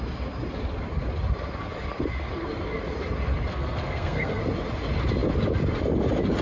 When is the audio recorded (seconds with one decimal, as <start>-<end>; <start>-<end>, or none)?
0.0-3.5; 4.4-6.4

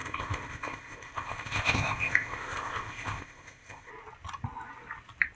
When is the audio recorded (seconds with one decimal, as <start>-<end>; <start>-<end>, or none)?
3.9-5.4